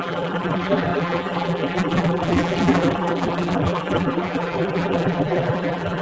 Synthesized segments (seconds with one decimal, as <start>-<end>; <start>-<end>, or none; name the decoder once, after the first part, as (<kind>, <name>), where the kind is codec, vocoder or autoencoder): 0.0-6.0 (vocoder, BigVGAN v2)